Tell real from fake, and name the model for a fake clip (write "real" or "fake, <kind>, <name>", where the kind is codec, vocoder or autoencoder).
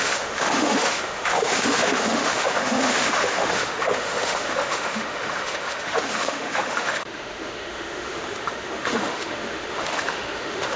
fake, autoencoder, DAC-VAE